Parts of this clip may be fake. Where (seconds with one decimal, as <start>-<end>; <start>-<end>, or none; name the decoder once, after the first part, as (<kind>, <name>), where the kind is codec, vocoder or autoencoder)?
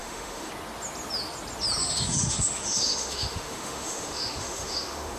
0.0-0.5 (autoencoder, DAC-VAE); 1.8-5.2